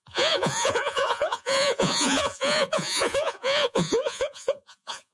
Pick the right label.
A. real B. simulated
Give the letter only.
B